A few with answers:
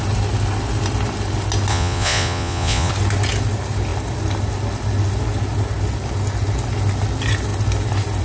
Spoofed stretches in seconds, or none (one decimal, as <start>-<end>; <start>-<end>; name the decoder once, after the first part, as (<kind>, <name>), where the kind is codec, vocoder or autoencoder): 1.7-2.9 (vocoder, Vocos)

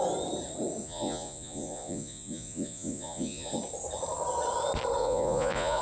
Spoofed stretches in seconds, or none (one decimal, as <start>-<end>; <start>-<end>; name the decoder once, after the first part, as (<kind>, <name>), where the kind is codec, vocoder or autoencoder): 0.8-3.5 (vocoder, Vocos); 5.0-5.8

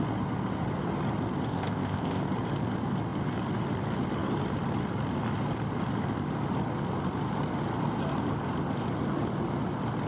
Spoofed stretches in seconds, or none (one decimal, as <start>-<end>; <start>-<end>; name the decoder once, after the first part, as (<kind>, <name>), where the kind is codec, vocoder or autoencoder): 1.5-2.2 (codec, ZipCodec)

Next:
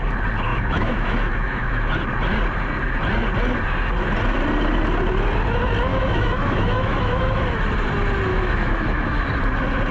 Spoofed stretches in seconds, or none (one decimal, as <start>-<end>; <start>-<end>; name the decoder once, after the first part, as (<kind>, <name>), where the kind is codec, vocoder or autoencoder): 0.5-1.9 (autoencoder, DAC-VAE); 5.9-7.3; 8.3-9.2